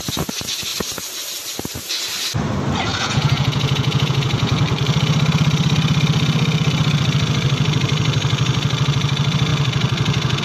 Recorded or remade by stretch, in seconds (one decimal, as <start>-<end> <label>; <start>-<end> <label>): 0.0-2.9 recorded; 2.9-4.6 remade; 4.6-10.4 recorded